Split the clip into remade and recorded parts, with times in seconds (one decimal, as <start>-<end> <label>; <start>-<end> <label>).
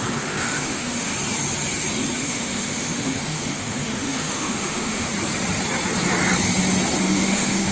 0.0-1.1 remade; 1.1-2.2 recorded; 2.2-5.1 remade; 5.1-7.0 recorded; 7.0-7.7 remade